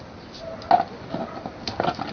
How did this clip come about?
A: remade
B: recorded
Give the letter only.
B